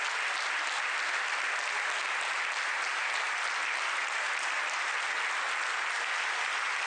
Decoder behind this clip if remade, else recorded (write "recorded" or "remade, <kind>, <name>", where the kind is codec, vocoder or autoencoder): recorded